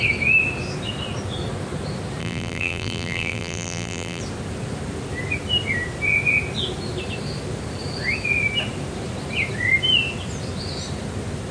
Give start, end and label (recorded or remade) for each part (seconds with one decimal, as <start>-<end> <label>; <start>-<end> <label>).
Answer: 0.0-2.2 recorded; 2.2-4.2 remade; 4.2-11.5 recorded